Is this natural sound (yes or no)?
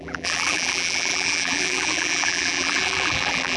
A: no